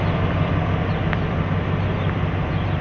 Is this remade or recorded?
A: recorded